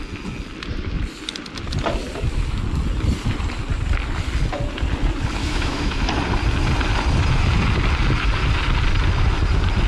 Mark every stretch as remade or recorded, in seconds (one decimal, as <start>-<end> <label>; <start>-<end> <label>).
0.0-5.4 recorded; 5.4-6.0 remade; 6.0-9.9 recorded